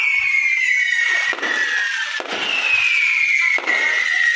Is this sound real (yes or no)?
yes